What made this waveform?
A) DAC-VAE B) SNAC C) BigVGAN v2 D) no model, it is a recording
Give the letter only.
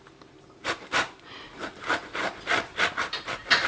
C